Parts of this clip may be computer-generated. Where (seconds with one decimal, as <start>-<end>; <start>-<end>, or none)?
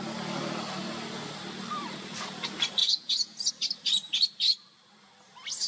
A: 2.8-3.5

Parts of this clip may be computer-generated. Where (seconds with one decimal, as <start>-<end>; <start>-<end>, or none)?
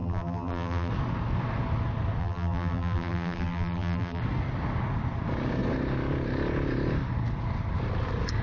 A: 0.0-0.9; 2.2-4.2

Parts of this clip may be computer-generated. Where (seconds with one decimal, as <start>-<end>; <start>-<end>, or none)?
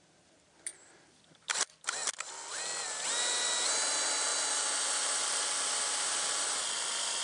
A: none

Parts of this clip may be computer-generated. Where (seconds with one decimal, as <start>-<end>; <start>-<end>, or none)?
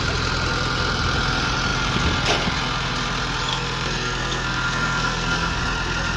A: 3.5-5.6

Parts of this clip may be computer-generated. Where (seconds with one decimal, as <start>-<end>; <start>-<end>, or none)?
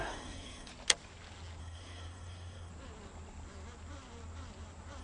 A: 0.0-0.7; 1.6-2.7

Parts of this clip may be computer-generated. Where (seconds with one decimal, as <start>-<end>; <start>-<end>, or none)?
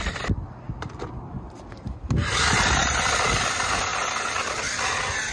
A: none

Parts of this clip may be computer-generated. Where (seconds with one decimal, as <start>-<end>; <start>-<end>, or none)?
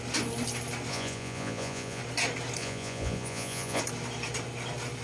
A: 0.9-2.0; 2.6-3.8